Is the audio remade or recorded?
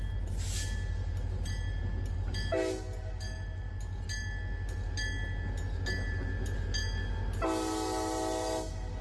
recorded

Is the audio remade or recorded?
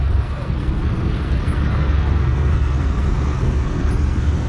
remade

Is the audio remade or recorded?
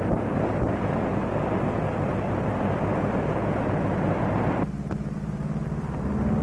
recorded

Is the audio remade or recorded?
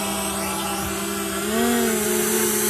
recorded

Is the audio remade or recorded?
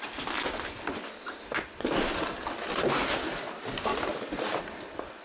recorded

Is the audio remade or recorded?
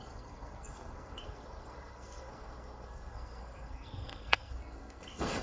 remade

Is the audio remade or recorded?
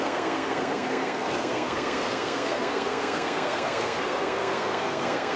remade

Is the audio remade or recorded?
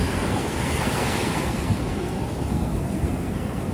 remade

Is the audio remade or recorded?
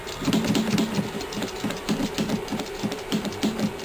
recorded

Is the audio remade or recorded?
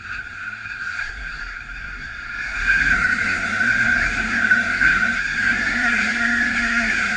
remade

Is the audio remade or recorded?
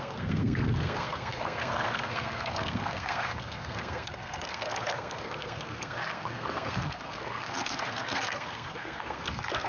remade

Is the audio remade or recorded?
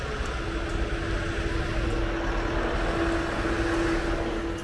recorded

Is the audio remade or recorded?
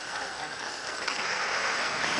remade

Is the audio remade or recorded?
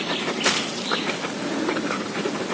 recorded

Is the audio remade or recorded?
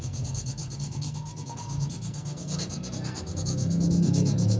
remade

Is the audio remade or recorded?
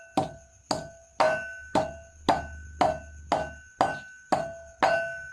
recorded